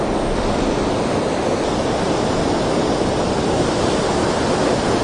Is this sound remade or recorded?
recorded